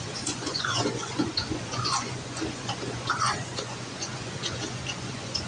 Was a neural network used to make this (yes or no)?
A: yes